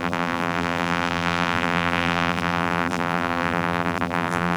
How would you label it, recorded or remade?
remade